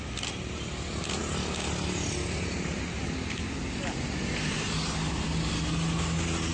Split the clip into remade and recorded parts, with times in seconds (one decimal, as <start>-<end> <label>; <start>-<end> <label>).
0.0-6.5 recorded